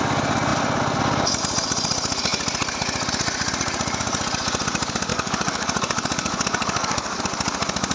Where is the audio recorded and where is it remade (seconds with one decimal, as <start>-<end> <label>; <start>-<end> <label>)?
0.0-5.1 recorded; 5.1-7.2 remade; 7.2-7.9 recorded